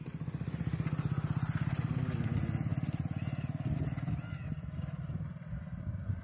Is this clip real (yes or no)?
yes